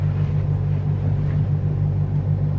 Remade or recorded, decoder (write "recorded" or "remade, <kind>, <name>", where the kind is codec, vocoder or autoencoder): recorded